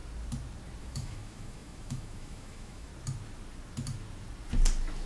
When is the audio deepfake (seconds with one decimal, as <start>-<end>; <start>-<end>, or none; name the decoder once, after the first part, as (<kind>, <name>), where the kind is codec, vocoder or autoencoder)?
0.8-2.9 (autoencoder, DAC-VAE)